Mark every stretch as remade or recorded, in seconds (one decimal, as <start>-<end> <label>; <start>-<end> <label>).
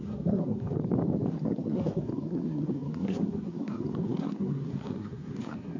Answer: 0.0-0.8 remade; 0.8-1.3 recorded; 1.3-5.8 remade